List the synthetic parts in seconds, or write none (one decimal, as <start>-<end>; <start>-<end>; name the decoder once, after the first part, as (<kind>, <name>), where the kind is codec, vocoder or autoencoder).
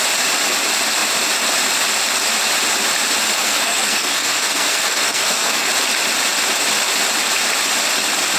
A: 3.4-5.7 (codec, SNAC)